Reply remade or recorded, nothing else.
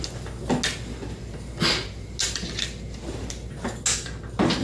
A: recorded